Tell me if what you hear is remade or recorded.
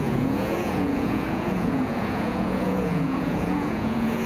remade